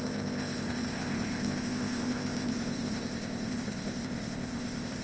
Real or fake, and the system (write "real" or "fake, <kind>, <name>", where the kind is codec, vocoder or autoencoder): fake, codec, ZipCodec